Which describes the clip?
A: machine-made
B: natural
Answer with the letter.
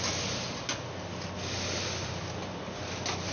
B